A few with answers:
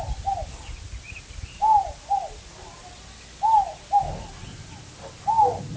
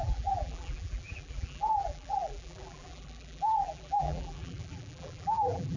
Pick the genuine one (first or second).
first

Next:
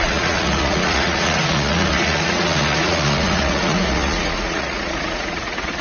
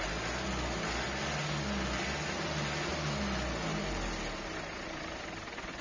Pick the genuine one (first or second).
second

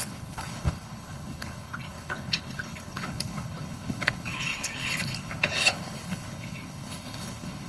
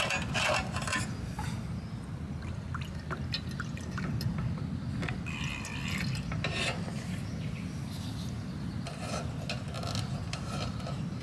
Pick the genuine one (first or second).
second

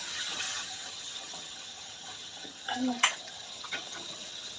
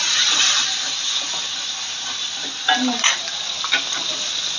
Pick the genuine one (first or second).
second